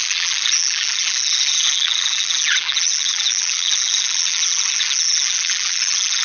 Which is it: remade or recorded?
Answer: remade